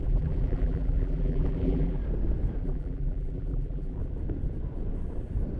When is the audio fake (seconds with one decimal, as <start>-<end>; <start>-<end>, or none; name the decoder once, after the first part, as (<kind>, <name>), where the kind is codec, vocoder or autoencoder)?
0.0-2.0 (vocoder, BigVGAN v2); 2.6-4.0